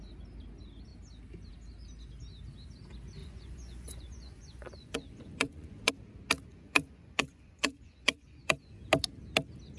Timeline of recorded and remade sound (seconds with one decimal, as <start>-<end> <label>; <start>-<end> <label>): 0.0-3.2 recorded; 3.2-5.9 remade; 5.9-6.5 recorded; 6.5-8.8 remade; 8.8-9.8 recorded